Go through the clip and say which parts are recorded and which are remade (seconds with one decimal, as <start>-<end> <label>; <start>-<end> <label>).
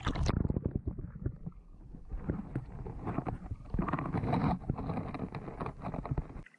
0.0-2.1 recorded; 2.1-4.9 remade; 4.9-6.6 recorded